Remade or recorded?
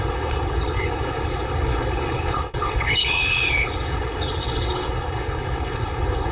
remade